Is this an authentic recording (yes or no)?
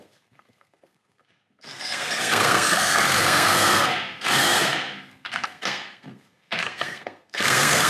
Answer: no